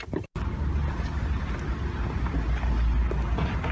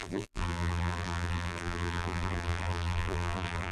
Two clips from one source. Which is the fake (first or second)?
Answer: second